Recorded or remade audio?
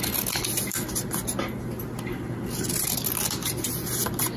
recorded